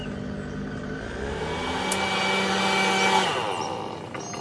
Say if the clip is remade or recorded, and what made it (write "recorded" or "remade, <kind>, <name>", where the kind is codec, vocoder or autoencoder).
recorded